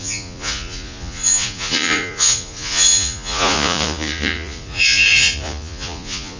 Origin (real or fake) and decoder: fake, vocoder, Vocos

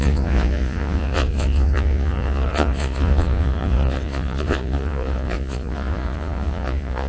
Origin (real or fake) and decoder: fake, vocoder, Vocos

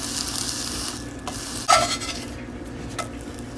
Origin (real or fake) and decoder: real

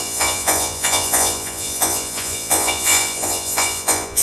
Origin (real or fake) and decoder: fake, vocoder, Vocos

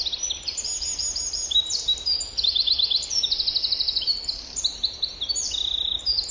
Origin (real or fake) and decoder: real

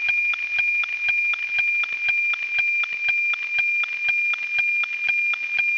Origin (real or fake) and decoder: real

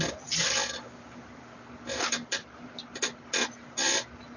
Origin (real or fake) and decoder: real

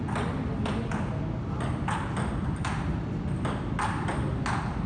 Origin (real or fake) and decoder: real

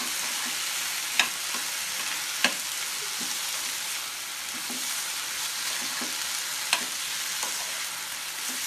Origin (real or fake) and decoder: real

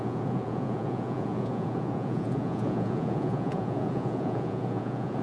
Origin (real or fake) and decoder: fake, vocoder, Vocos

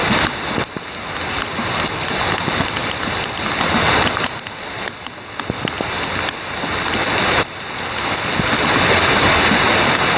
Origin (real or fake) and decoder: real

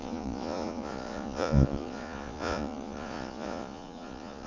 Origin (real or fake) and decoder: fake, vocoder, Vocos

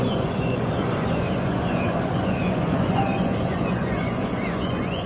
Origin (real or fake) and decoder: fake, vocoder, Vocos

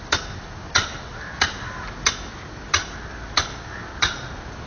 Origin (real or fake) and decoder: real